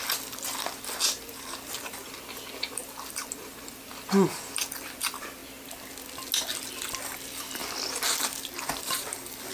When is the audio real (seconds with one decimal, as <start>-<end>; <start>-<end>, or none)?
5.4-7.0; 7.6-8.8